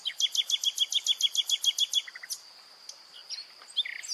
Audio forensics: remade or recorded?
recorded